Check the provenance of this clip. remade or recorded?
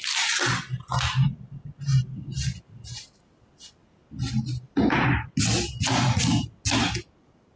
recorded